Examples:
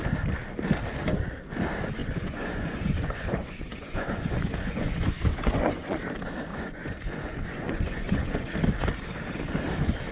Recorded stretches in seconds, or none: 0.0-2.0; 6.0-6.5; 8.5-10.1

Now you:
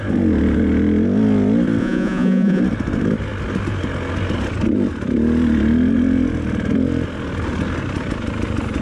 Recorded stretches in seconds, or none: 0.0-1.8; 2.6-8.8

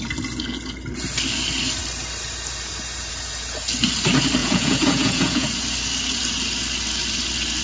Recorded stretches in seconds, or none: 0.0-4.4; 5.5-7.6

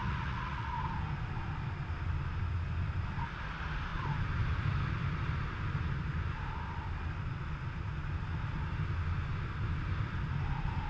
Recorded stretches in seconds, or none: 0.7-10.9

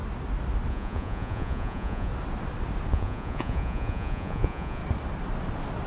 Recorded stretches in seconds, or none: 0.0-0.7; 2.1-2.9; 4.8-5.9

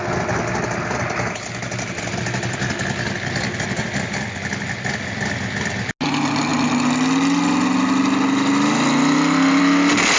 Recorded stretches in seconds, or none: 0.0-10.2